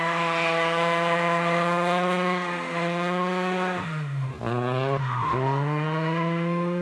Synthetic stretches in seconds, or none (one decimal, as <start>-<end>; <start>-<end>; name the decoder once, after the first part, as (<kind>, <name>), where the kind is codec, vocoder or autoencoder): 0.0-4.3 (autoencoder, DAC-VAE); 5.0-6.8